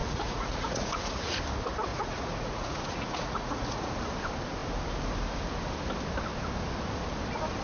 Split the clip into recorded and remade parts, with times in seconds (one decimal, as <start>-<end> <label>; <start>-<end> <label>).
0.0-1.4 remade; 1.4-1.9 recorded; 1.9-3.9 remade; 3.9-7.6 recorded

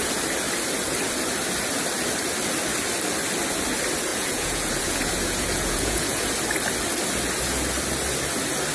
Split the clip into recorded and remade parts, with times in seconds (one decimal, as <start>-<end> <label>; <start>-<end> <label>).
0.0-4.1 recorded; 4.1-6.3 remade; 6.3-8.7 recorded